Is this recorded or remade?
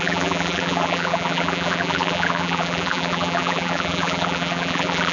remade